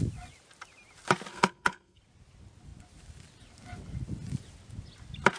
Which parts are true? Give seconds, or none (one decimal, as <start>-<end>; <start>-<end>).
0.0-1.3; 2.0-5.4